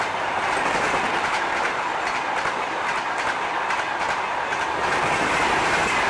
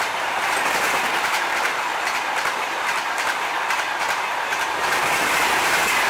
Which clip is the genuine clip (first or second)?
first